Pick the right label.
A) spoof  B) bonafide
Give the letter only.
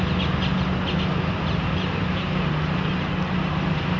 B